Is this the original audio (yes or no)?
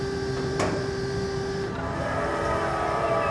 no